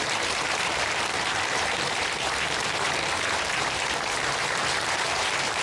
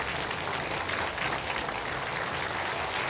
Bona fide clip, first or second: second